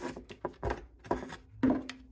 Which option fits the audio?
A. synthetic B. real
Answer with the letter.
B